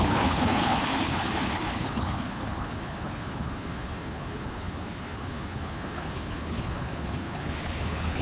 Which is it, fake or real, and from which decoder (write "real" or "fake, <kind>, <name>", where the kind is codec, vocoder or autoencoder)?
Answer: fake, codec, HILCodec